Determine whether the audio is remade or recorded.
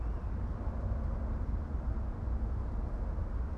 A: recorded